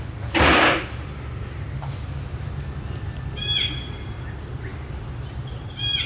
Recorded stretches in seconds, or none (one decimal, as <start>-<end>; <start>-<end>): 0.0-6.1